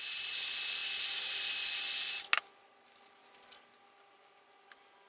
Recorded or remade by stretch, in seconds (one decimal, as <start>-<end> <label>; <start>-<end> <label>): 0.0-5.1 recorded

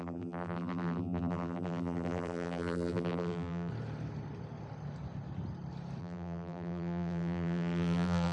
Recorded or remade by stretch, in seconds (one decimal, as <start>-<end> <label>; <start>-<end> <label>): 0.0-3.7 remade; 3.7-6.0 recorded; 6.0-8.3 remade

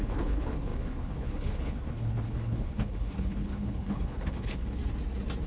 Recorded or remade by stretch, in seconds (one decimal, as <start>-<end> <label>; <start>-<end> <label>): 0.0-4.8 remade; 4.8-5.5 recorded

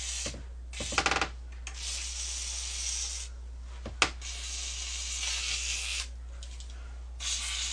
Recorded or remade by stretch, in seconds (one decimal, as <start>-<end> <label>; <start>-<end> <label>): 0.0-5.4 recorded; 5.4-6.0 remade; 6.0-7.7 recorded

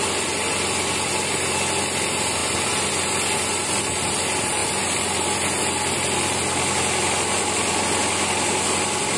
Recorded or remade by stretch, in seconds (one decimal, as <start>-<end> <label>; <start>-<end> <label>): 0.0-9.2 recorded

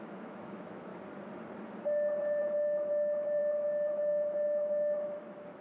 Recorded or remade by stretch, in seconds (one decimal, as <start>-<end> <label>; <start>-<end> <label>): 0.0-0.9 remade; 0.9-2.4 recorded; 2.4-3.4 remade; 3.4-3.9 recorded; 3.9-5.6 remade

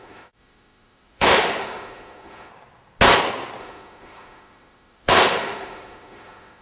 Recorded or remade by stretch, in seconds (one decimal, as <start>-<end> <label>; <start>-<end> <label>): 0.0-2.5 remade; 2.5-3.6 recorded; 3.6-6.6 remade

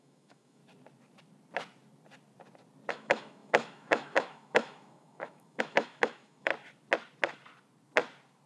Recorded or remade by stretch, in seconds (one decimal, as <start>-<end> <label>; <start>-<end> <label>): 0.0-0.6 remade; 0.6-2.9 recorded; 2.9-6.5 remade; 6.5-8.5 recorded